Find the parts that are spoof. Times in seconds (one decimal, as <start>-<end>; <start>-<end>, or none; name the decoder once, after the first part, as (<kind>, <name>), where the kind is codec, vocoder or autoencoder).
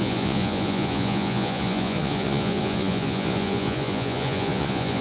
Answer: 0.0-5.0 (vocoder, Vocos)